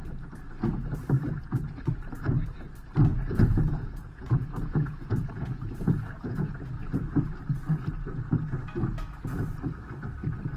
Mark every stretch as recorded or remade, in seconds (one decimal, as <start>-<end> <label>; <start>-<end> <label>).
0.0-3.1 recorded; 3.1-6.7 remade; 6.7-10.6 recorded